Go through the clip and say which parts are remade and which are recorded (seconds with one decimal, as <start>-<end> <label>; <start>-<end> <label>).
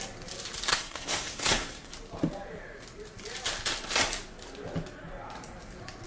0.0-0.7 recorded; 0.7-1.9 remade; 1.9-6.1 recorded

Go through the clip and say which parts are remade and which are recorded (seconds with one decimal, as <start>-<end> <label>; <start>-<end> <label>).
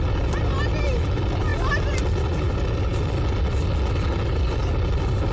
0.0-5.3 recorded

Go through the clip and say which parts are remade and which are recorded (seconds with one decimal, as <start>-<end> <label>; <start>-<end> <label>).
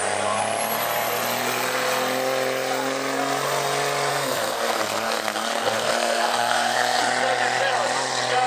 0.0-4.1 recorded; 4.1-7.0 remade; 7.0-8.5 recorded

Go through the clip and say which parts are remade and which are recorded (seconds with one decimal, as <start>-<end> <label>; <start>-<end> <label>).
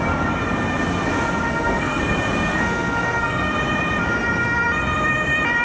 0.0-1.5 recorded; 1.5-2.0 remade; 2.0-2.5 recorded; 2.5-3.5 remade; 3.5-5.6 recorded